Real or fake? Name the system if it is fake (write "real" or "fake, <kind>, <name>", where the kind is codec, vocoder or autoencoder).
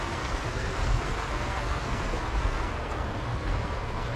fake, codec, SNAC